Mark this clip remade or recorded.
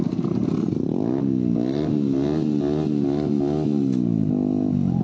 recorded